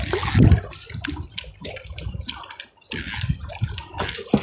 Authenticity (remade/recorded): recorded